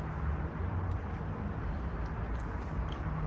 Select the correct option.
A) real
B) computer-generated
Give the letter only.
A